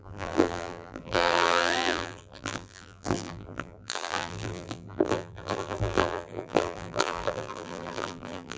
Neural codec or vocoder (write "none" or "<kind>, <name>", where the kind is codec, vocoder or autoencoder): vocoder, BigVGAN v2